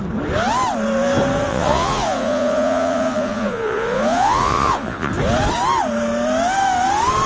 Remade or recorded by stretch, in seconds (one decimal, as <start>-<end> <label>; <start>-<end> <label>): 0.0-1.5 recorded; 1.5-5.1 remade; 5.1-7.3 recorded